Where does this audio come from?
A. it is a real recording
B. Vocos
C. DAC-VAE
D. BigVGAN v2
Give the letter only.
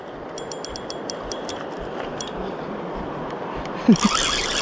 A